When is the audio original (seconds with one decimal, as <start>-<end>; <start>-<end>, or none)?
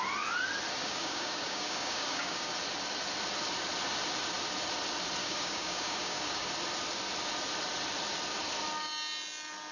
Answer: 0.0-0.8; 2.5-5.2; 6.5-9.7